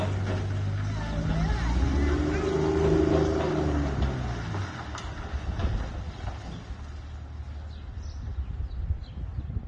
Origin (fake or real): real